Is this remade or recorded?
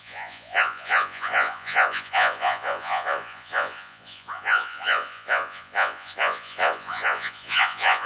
remade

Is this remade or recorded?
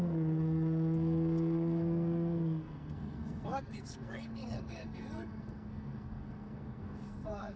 remade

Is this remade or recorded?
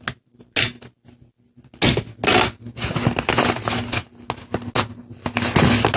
recorded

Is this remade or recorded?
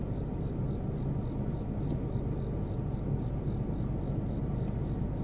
recorded